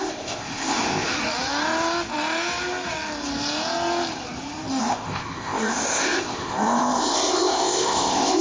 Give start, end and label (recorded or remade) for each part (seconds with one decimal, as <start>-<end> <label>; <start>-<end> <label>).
0.0-1.1 remade; 1.1-4.8 recorded; 4.8-8.4 remade